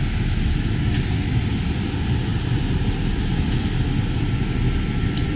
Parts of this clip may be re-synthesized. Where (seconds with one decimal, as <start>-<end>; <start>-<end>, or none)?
none